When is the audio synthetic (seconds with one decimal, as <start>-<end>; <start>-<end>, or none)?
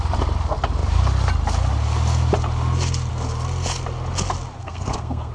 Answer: 4.6-5.3